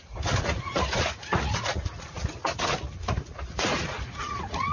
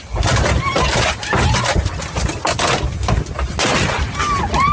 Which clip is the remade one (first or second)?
first